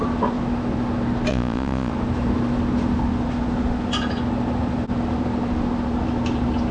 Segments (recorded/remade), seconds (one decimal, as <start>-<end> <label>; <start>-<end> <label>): 0.0-1.3 recorded; 1.3-1.9 remade; 1.9-6.7 recorded